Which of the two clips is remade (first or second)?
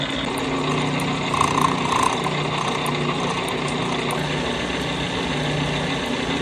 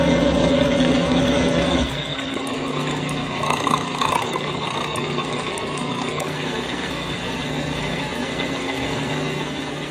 second